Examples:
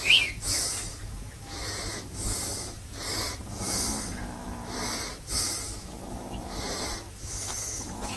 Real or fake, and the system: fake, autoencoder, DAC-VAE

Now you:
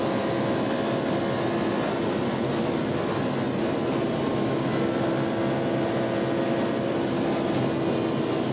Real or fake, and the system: real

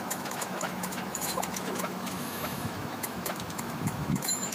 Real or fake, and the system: fake, autoencoder, DAC-VAE